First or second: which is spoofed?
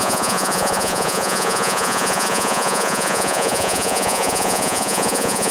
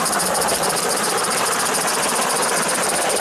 first